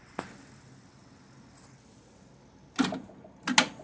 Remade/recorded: recorded